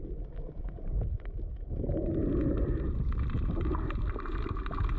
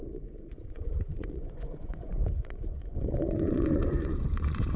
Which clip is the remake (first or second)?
second